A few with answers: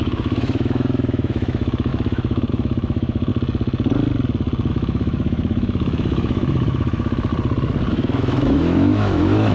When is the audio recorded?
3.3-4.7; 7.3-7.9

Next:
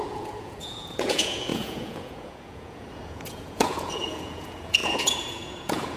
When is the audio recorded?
none

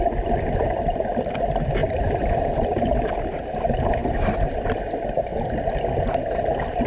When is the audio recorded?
0.0-1.8; 3.4-4.0; 4.7-6.9

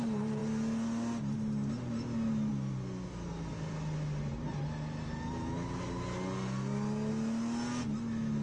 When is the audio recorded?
0.0-8.4

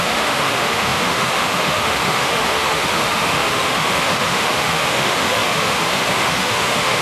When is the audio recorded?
none

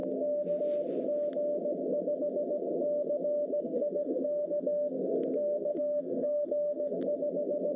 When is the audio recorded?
0.6-3.5; 7.0-7.8

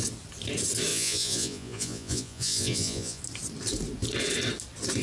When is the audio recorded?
0.0-0.9; 3.2-5.0